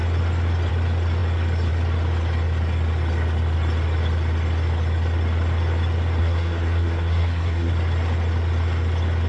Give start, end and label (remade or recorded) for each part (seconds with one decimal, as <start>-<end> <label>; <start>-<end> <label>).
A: 0.0-6.2 recorded; 6.2-7.7 remade; 7.7-9.3 recorded